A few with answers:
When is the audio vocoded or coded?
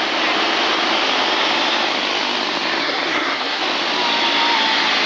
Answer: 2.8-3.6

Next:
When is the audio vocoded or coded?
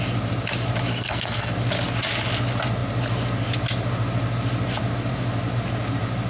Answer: 0.9-1.5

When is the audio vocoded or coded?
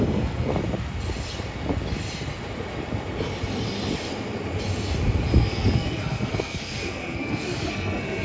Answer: 0.0-0.5; 5.4-8.2